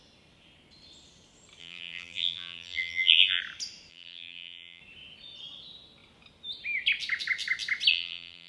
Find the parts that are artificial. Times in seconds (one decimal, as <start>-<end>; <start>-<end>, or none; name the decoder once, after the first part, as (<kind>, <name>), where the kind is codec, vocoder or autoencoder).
1.6-3.4 (vocoder, BigVGAN v2); 3.9-4.8; 7.9-8.5